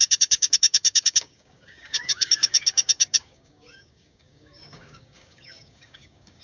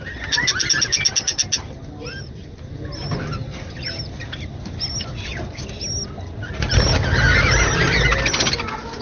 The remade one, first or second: first